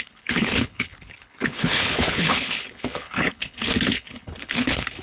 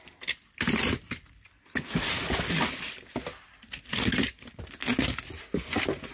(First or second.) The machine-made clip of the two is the first